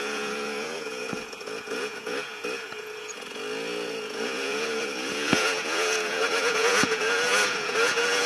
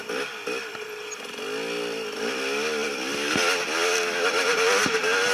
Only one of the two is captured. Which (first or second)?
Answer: second